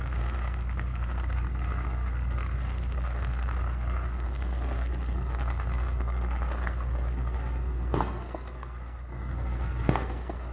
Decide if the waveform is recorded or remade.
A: remade